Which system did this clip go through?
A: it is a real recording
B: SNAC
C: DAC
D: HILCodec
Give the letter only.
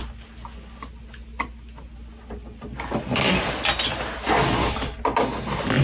A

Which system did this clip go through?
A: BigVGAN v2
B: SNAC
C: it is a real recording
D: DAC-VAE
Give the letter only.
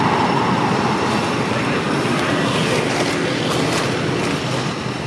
C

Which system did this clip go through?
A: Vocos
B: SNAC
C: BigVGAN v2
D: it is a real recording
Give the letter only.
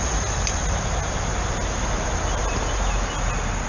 D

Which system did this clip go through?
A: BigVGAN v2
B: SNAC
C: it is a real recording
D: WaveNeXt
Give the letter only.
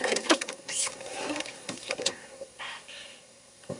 B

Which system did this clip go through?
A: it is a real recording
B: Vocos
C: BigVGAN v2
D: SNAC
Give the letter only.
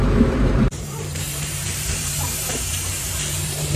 C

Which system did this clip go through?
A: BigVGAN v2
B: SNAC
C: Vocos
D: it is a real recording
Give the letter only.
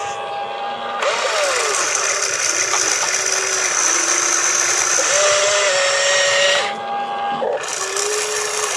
D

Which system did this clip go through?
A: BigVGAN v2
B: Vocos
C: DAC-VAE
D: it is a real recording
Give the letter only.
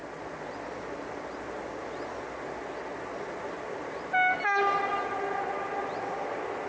D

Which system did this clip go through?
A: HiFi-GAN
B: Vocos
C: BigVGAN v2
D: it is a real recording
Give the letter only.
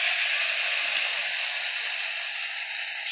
D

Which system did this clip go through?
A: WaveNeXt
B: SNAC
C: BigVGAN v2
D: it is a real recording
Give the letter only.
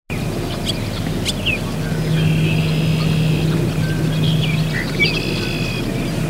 D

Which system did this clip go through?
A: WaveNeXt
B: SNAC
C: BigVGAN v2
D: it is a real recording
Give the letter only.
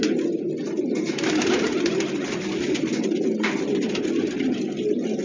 D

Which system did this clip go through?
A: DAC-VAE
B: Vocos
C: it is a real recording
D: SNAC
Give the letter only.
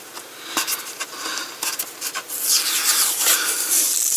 C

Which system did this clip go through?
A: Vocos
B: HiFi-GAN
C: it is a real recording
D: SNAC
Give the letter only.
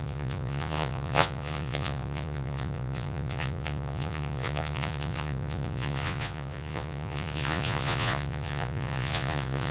A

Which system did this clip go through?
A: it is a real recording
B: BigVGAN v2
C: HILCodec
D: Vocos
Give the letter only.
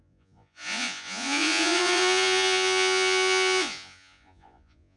D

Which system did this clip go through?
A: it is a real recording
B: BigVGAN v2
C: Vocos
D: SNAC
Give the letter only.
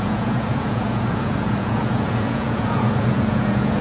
C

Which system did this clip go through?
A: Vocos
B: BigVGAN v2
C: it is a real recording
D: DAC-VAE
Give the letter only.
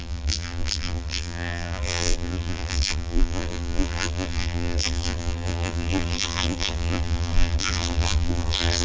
B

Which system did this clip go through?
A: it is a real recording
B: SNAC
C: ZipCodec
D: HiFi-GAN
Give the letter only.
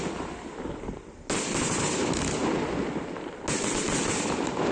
A